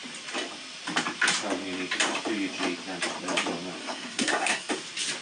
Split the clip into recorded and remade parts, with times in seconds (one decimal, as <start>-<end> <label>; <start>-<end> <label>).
0.0-3.8 recorded; 3.8-4.7 remade; 4.7-5.2 recorded